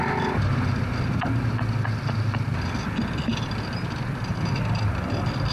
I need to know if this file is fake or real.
real